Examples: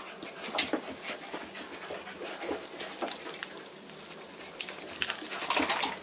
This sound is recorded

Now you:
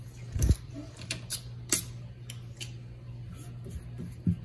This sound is recorded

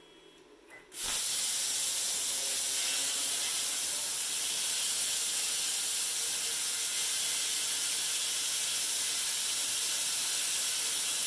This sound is recorded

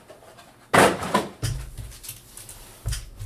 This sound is recorded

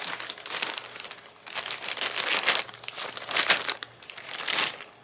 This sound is recorded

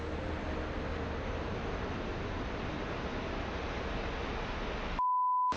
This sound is recorded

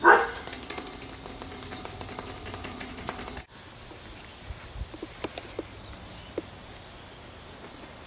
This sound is recorded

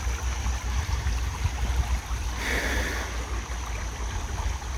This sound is recorded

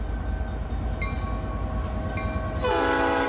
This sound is recorded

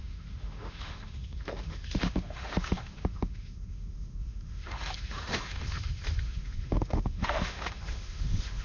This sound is remade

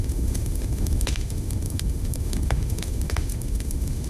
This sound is remade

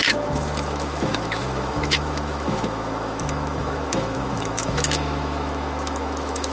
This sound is remade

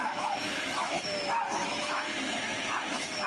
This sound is remade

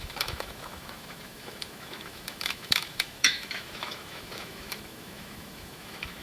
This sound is remade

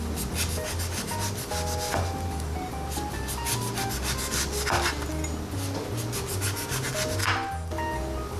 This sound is recorded